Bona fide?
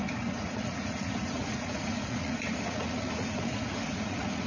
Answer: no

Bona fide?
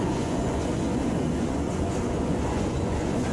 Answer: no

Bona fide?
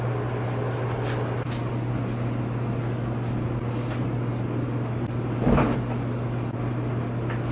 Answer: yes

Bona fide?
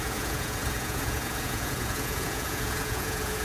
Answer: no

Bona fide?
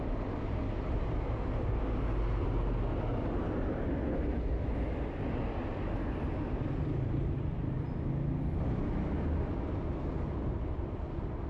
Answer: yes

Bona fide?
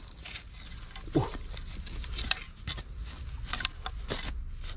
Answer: yes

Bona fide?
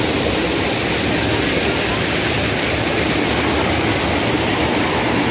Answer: yes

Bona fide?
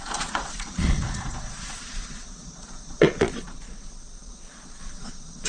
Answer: no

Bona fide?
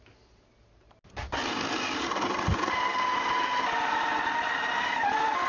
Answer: yes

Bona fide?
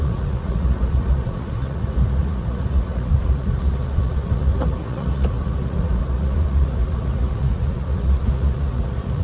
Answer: no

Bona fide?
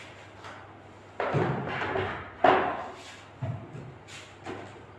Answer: yes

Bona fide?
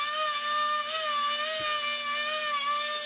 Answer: yes